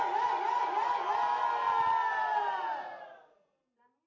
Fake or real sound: real